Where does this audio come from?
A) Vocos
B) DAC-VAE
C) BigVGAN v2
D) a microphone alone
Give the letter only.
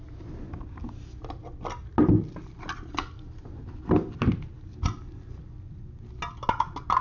D